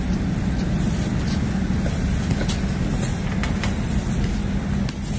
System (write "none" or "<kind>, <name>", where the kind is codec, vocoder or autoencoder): none